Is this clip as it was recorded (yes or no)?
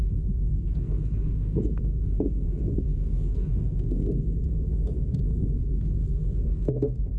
no